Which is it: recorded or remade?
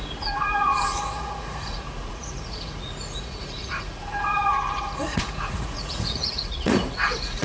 remade